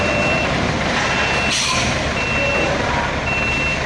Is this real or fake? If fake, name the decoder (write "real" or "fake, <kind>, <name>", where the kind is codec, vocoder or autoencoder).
real